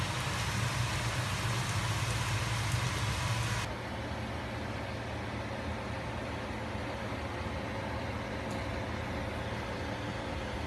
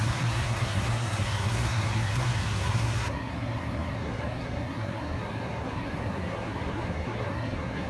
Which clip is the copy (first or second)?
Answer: second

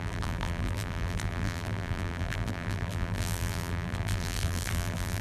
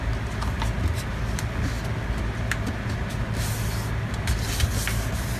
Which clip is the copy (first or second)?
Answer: first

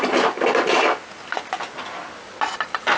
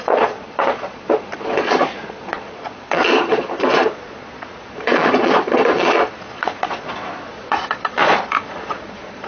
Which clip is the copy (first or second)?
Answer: second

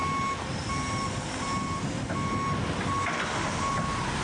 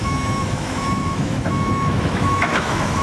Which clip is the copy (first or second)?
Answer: second